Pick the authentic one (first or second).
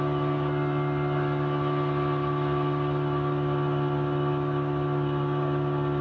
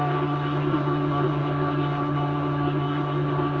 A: first